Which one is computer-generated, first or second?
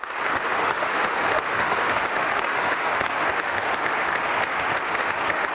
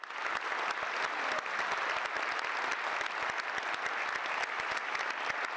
first